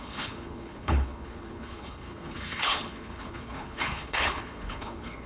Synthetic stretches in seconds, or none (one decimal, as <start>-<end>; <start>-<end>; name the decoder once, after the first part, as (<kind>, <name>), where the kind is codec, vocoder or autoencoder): 0.0-5.3 (codec, HILCodec)